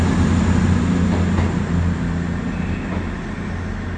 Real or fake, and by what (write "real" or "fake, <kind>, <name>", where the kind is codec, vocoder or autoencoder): real